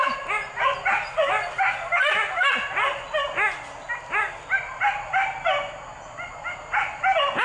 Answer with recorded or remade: recorded